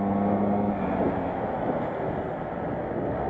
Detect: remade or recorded recorded